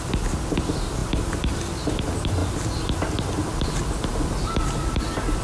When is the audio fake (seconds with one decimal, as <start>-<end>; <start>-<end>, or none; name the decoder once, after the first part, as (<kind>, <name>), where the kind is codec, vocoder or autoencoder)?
0.0-1.0 (vocoder, BigVGAN v2); 2.0-2.4; 3.2-4.1; 4.7-5.4